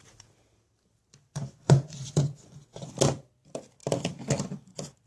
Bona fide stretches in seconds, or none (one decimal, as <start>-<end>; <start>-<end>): 0.0-1.3; 2.9-5.1